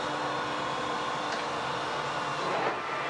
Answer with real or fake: real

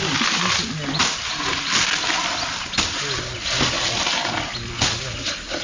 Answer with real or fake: real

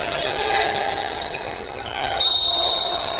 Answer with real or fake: fake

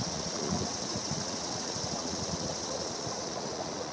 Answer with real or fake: fake